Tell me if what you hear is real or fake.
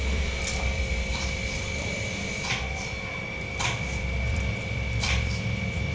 fake